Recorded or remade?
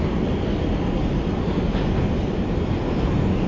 recorded